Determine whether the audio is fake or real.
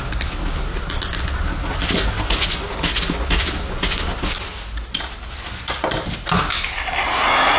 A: real